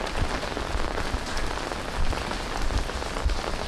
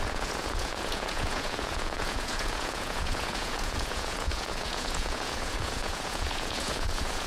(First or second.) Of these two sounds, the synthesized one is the second